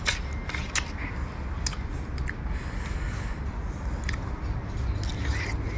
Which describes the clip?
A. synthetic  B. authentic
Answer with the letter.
B